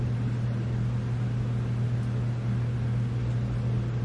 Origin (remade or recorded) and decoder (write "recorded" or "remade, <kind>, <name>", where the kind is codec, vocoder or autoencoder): recorded